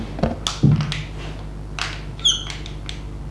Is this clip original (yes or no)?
yes